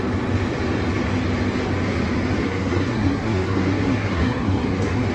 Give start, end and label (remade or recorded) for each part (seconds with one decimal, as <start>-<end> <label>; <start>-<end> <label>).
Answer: 0.0-2.4 recorded; 2.4-5.1 remade